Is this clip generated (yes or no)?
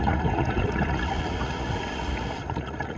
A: yes